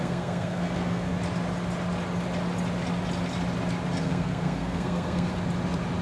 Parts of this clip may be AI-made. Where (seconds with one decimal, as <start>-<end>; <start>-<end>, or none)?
0.0-1.1; 4.0-5.3